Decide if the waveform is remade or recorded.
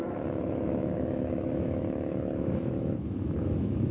remade